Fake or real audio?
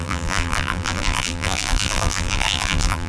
fake